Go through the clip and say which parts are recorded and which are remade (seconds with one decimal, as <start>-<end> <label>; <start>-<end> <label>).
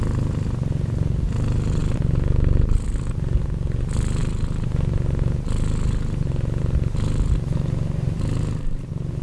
0.0-9.2 recorded